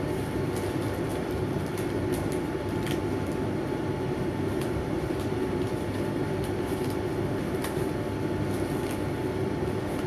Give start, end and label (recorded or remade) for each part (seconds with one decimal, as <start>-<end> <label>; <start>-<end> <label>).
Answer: 0.0-1.1 recorded; 1.1-6.1 remade; 6.1-10.1 recorded